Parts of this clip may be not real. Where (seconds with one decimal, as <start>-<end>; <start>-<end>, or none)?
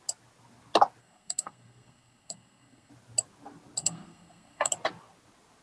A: 1.0-2.9; 3.8-4.7